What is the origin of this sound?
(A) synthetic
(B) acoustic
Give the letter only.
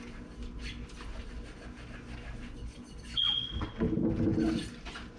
B